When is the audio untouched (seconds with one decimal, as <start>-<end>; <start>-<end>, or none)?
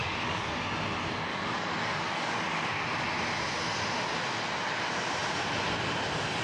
0.6-1.3; 2.7-6.4